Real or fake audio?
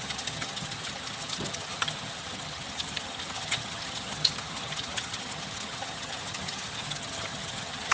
fake